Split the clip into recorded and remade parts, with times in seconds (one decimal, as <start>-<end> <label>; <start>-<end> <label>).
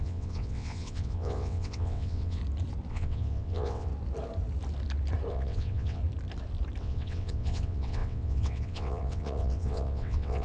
0.0-2.4 remade; 2.4-2.9 recorded; 2.9-3.9 remade; 3.9-5.3 recorded; 5.3-6.0 remade; 6.0-6.8 recorded; 6.8-10.4 remade